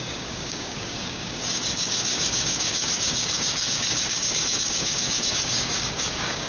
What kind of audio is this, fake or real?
fake